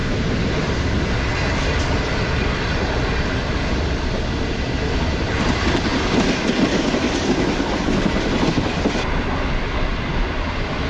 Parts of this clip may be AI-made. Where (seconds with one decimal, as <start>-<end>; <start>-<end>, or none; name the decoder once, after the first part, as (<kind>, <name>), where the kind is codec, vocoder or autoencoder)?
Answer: none